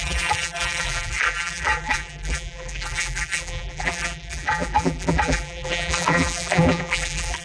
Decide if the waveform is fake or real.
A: fake